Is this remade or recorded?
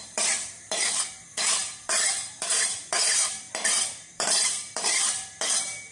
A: remade